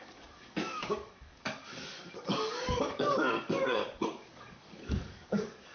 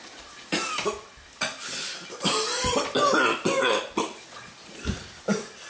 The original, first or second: second